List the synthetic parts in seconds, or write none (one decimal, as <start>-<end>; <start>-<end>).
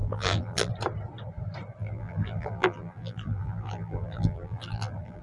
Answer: 0.0-0.7; 1.8-5.2